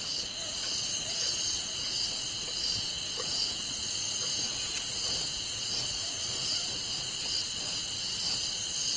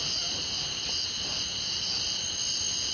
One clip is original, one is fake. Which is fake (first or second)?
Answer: first